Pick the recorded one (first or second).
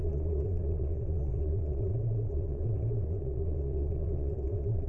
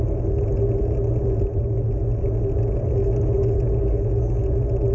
second